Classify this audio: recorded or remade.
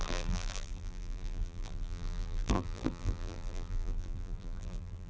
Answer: remade